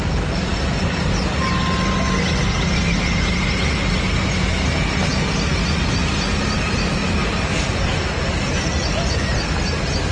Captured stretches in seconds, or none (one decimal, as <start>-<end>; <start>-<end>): 0.0-10.1